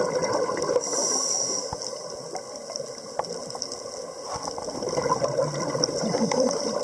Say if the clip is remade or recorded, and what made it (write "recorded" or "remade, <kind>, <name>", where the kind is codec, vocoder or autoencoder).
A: recorded